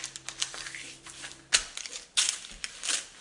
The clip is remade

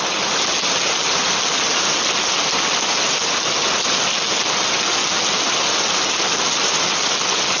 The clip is recorded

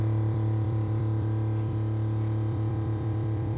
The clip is remade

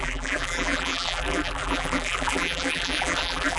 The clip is remade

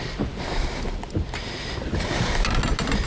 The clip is recorded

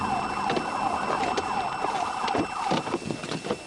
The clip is recorded